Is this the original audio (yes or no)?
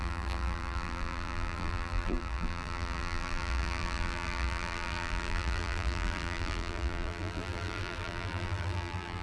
no